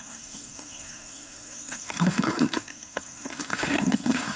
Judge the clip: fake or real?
fake